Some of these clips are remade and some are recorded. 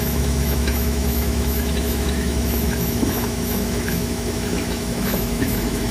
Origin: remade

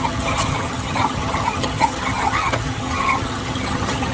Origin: remade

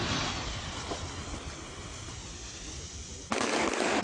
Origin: recorded